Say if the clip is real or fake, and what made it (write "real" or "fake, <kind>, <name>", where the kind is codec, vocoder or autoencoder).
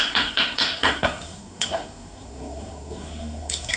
fake, codec, SNAC